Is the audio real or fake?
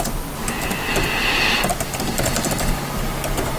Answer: real